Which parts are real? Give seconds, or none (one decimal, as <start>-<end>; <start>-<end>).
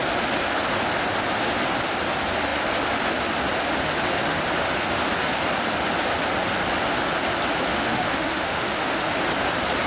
0.0-7.7; 9.1-9.9